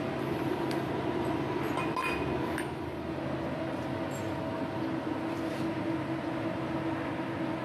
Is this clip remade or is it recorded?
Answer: recorded